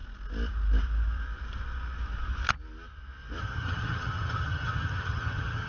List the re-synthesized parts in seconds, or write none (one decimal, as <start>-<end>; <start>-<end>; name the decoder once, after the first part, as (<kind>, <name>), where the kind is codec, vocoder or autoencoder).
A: 3.4-5.7 (vocoder, HiFi-GAN)